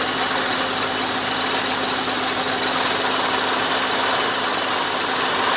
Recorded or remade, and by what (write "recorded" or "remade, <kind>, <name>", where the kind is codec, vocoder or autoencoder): recorded